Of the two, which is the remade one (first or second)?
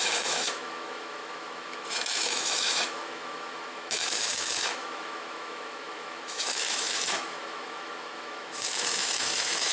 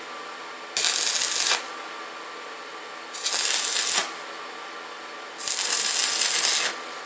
first